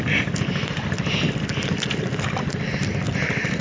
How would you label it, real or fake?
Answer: real